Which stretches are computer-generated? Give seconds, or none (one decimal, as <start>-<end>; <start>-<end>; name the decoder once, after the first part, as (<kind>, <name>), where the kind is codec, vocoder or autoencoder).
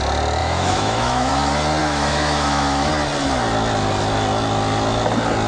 0.4-1.3 (autoencoder, DAC-VAE); 1.8-2.9